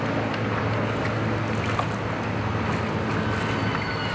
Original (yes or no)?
yes